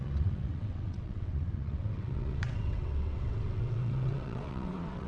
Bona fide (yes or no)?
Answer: no